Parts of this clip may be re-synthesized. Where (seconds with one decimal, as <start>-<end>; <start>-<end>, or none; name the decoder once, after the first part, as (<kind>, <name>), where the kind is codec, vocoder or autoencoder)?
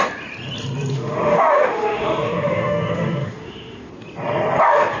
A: 0.9-3.9 (autoencoder, DAC-VAE)